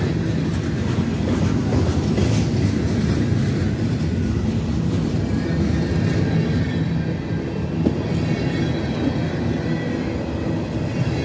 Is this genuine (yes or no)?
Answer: yes